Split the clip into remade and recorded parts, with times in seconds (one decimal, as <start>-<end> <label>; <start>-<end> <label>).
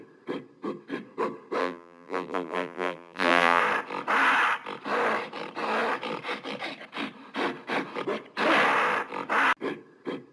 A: 0.0-1.6 recorded; 1.6-3.6 remade; 3.6-10.3 recorded